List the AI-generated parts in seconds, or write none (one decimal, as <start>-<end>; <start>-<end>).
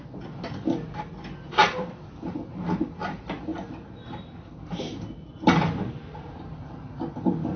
none